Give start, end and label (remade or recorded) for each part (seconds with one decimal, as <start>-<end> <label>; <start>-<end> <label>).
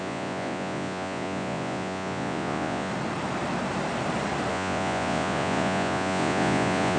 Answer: 0.0-2.9 remade; 2.9-4.5 recorded; 4.5-7.0 remade